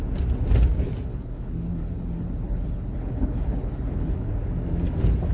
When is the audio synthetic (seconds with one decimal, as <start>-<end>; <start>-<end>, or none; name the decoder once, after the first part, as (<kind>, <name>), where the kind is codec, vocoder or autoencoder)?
1.1-4.3 (codec, HILCodec)